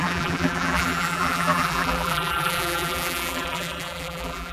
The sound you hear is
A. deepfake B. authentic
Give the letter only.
A